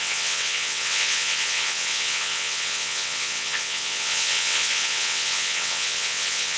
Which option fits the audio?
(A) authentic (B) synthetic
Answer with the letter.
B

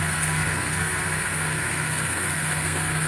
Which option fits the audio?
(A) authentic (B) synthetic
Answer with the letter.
B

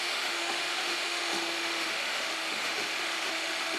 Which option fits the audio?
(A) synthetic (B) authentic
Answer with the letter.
A